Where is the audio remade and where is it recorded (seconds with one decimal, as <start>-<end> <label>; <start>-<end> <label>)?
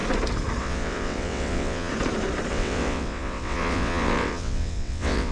0.0-0.6 recorded; 0.6-1.9 remade; 1.9-2.5 recorded; 2.5-5.3 remade